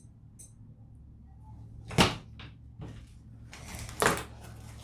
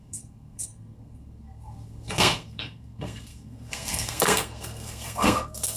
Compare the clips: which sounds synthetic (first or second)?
second